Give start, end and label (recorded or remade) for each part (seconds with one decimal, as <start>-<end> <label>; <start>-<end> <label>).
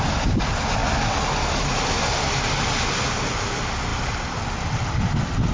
0.0-5.5 recorded